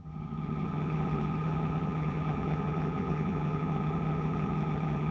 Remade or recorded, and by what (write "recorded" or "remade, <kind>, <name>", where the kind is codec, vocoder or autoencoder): remade, vocoder, HiFi-GAN